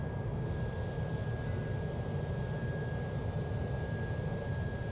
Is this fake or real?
real